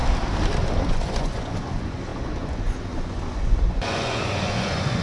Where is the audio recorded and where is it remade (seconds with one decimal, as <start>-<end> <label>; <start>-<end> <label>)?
0.0-0.9 recorded; 0.9-5.0 remade